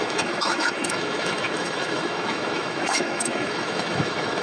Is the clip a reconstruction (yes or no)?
yes